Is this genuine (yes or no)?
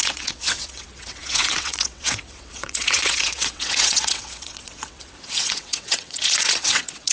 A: no